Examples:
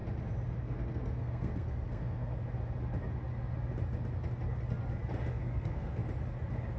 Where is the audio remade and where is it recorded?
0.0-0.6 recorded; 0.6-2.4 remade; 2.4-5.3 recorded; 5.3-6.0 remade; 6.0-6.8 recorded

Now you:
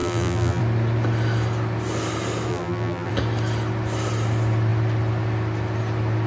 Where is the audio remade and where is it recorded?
0.0-0.6 remade; 0.6-2.5 recorded; 2.5-3.1 remade; 3.1-6.3 recorded